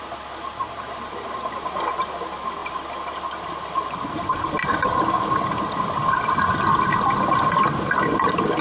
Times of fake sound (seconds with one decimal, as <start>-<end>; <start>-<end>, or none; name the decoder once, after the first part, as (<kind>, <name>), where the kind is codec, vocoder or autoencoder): none